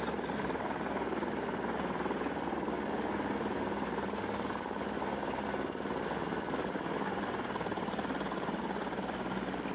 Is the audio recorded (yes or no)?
yes